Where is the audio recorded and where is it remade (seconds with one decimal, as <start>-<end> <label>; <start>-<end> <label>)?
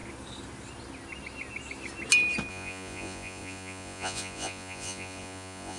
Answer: 0.0-2.5 recorded; 2.5-5.8 remade